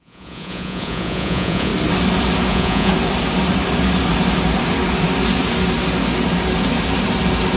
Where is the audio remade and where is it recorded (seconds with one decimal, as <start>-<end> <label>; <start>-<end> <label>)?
0.0-1.7 remade; 1.7-2.5 recorded; 2.5-2.9 remade; 2.9-7.6 recorded